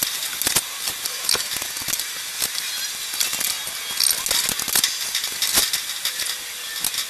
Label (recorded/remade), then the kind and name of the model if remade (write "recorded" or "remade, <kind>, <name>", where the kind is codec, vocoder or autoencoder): recorded